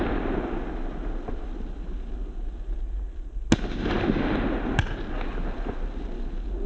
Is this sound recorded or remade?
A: recorded